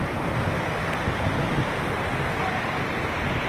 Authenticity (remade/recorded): recorded